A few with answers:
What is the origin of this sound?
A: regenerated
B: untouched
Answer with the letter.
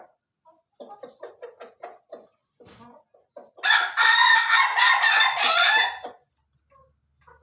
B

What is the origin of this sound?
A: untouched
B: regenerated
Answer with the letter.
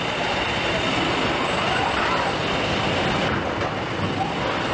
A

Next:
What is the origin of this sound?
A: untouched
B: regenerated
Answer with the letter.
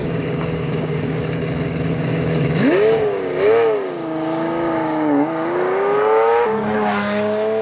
B